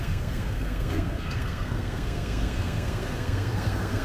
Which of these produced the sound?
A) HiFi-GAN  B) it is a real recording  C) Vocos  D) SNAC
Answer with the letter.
D